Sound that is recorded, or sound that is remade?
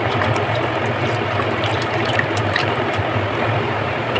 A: remade